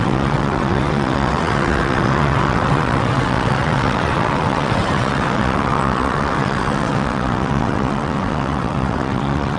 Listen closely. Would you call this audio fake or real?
fake